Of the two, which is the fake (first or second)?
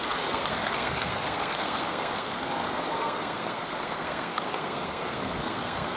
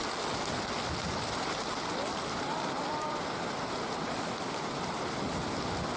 first